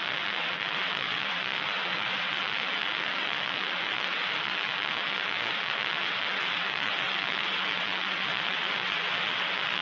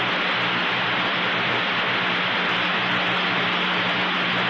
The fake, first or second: first